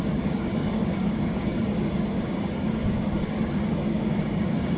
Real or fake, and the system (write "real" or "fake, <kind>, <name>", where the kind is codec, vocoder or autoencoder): fake, codec, DAC